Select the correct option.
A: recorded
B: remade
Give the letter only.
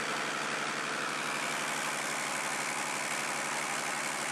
A